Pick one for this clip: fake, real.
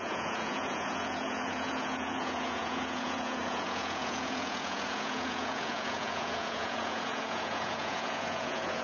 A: fake